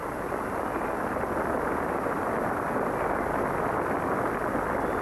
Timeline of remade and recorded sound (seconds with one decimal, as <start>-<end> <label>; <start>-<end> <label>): 0.0-5.0 recorded